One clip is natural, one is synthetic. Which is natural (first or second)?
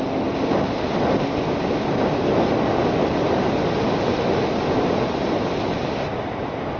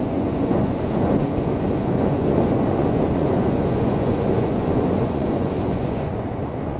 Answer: first